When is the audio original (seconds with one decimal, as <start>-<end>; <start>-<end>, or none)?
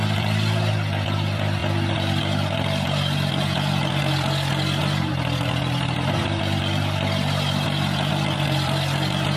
0.0-9.4